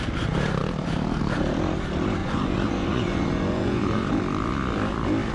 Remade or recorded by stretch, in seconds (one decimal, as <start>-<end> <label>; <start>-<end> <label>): 0.0-2.2 recorded; 2.2-4.1 remade; 4.1-5.3 recorded